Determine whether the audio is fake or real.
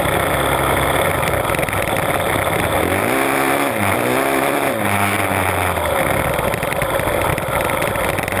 real